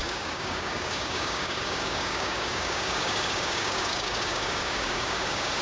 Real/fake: fake